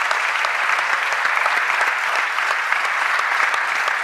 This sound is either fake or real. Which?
real